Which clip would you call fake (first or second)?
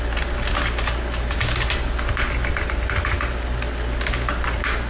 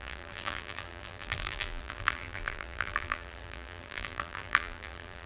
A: second